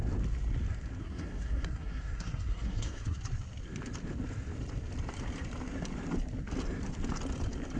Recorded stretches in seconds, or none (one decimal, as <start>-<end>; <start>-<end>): 0.0-1.0; 3.2-7.8